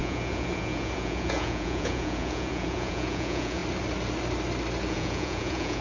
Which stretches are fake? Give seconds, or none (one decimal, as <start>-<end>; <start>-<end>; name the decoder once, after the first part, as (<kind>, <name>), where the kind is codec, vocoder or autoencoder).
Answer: 0.0-3.6 (vocoder, Vocos); 4.9-5.8